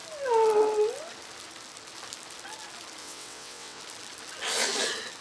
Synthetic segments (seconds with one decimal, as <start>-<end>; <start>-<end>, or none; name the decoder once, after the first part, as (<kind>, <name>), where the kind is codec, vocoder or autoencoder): 3.0-3.8 (vocoder, WaveNeXt)